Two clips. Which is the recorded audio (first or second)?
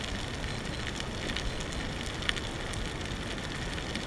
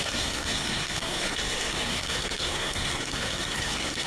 first